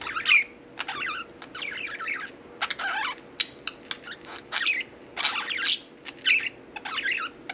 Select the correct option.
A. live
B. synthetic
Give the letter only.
A